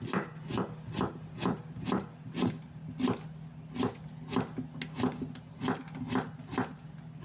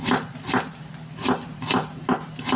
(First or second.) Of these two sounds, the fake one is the second